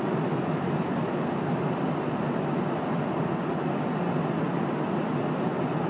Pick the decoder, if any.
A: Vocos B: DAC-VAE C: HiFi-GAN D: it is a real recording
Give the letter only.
D